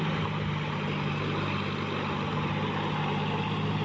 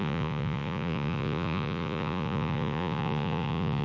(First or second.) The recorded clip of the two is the first